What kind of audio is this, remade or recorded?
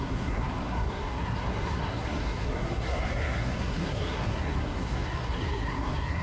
remade